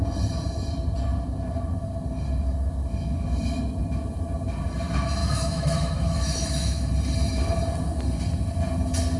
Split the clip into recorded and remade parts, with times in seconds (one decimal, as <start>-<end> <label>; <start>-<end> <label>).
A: 0.0-5.2 recorded; 5.2-6.9 remade; 6.9-9.2 recorded